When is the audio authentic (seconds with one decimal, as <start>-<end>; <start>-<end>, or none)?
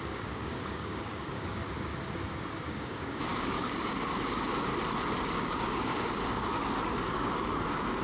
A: 1.6-2.7; 4.7-5.4